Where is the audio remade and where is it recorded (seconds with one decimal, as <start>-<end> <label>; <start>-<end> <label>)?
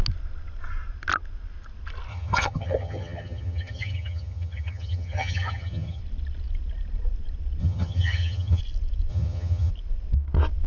0.0-2.1 recorded; 2.1-6.0 remade; 6.0-7.6 recorded; 7.6-8.6 remade; 8.6-9.1 recorded; 9.1-9.7 remade; 9.7-10.7 recorded